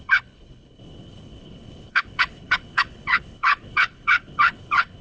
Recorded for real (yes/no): no